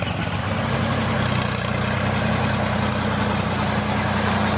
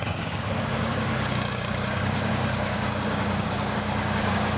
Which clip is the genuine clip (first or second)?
first